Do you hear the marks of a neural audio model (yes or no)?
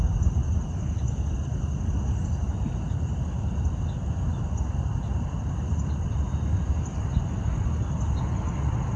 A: no